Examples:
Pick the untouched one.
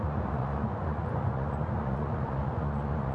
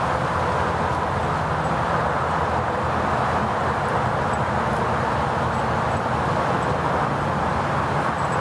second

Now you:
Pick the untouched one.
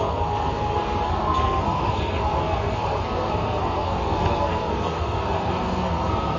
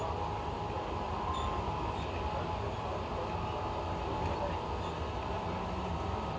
second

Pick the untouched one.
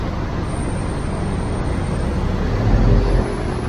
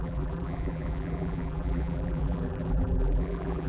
first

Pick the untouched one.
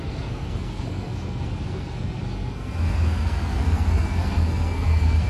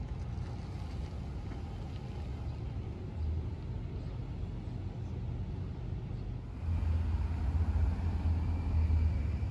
second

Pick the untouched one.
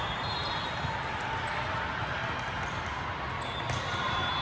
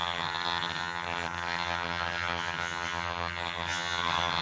first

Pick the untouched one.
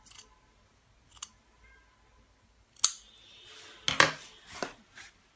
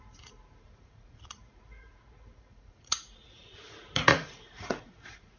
first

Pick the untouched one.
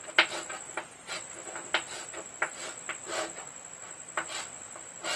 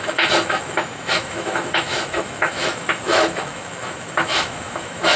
first